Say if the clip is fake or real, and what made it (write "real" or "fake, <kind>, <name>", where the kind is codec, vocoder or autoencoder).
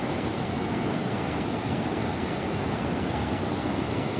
fake, codec, SNAC